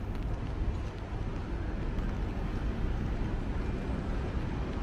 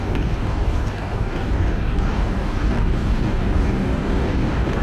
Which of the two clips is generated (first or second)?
second